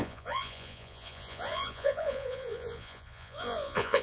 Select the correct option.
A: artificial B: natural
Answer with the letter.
A